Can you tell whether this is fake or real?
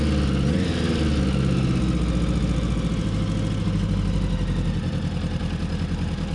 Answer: real